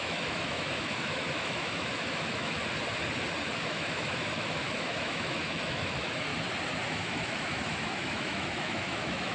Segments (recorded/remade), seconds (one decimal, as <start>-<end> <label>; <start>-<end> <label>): 0.0-2.6 remade; 2.6-3.6 recorded; 3.6-6.3 remade; 6.3-6.9 recorded; 6.9-9.3 remade